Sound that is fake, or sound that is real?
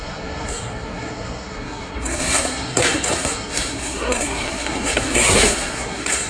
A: fake